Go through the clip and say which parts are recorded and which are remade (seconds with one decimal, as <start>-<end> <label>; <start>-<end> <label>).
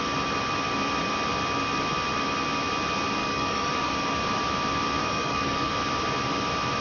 0.0-3.2 recorded; 3.2-3.9 remade; 3.9-5.0 recorded; 5.0-5.7 remade; 5.7-6.8 recorded